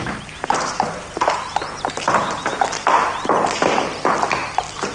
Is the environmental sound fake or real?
real